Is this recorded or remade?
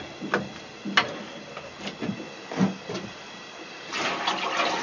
recorded